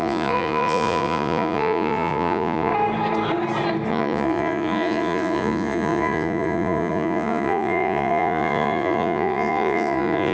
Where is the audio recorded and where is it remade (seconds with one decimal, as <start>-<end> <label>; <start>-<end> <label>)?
0.0-2.7 remade; 2.7-3.9 recorded; 3.9-10.3 remade

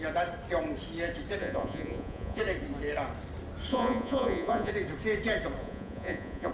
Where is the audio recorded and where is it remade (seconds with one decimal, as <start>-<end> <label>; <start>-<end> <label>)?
0.0-1.4 recorded; 1.4-2.4 remade; 2.4-3.7 recorded; 3.7-4.7 remade; 4.7-5.6 recorded; 5.6-6.5 remade

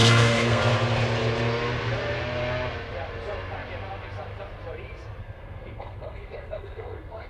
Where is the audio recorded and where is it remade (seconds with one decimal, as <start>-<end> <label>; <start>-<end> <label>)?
0.0-0.6 remade; 0.6-5.2 recorded; 5.2-7.3 remade

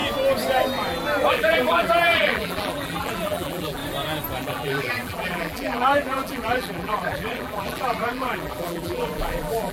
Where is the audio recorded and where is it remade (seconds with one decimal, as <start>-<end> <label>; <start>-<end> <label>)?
0.0-1.3 recorded; 1.3-3.8 remade; 3.8-4.4 recorded; 4.4-9.7 remade

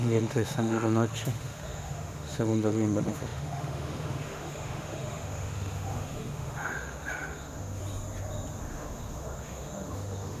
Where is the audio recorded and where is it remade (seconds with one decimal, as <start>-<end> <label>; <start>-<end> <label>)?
0.0-7.8 remade; 7.8-8.6 recorded; 8.6-10.4 remade

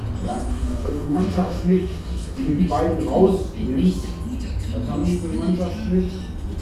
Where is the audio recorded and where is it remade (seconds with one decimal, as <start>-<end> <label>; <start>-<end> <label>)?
0.0-0.5 recorded; 0.5-2.6 remade; 2.6-6.6 recorded

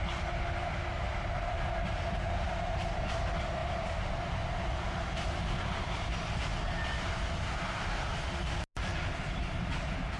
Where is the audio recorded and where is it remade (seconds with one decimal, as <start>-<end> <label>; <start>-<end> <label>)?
0.0-3.6 recorded; 3.6-4.5 remade; 4.5-10.2 recorded